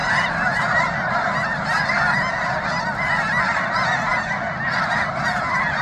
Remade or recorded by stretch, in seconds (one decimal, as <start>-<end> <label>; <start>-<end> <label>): 0.0-5.8 recorded